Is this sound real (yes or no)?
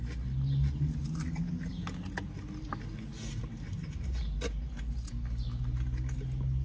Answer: yes